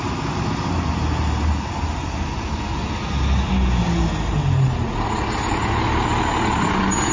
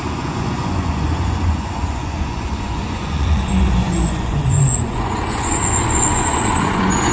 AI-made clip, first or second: second